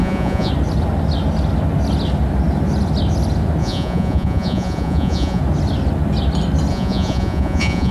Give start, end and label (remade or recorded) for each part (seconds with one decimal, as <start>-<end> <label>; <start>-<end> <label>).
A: 0.0-0.5 remade; 0.5-3.6 recorded; 3.6-5.4 remade; 5.4-6.7 recorded; 6.7-7.9 remade